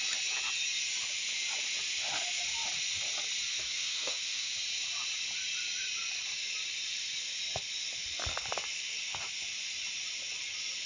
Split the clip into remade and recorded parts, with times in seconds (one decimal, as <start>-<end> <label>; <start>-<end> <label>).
0.0-3.5 recorded; 3.5-4.5 remade; 4.5-10.9 recorded